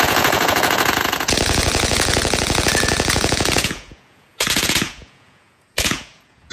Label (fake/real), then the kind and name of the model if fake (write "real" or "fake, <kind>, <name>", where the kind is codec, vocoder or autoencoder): fake, vocoder, Vocos